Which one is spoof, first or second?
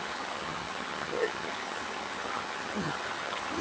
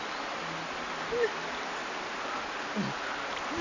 first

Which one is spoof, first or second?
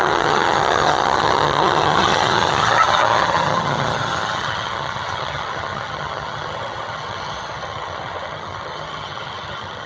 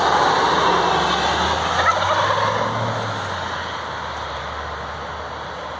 first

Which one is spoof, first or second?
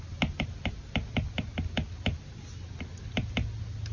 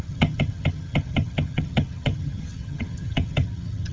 second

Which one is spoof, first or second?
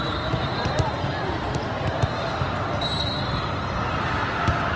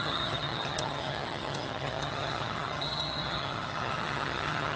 second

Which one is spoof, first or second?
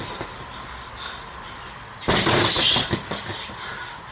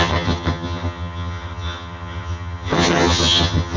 second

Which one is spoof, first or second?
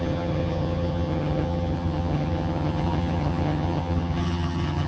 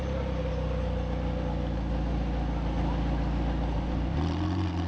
first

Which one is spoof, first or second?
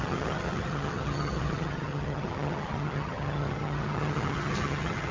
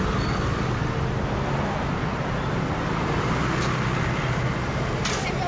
first